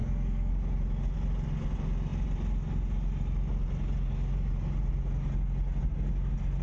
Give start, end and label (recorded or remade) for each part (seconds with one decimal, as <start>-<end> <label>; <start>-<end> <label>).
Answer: 0.0-0.5 remade; 0.5-6.6 recorded